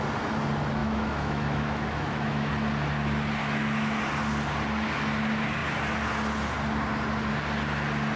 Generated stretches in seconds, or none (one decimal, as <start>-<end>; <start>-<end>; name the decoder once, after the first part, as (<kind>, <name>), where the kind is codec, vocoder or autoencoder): 0.8-2.5 (autoencoder, DAC-VAE); 3.4-4.0